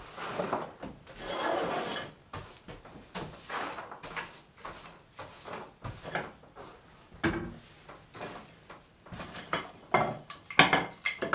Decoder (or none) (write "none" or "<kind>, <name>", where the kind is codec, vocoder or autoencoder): none